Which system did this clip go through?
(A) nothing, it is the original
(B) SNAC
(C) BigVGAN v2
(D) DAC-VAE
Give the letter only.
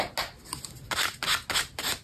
A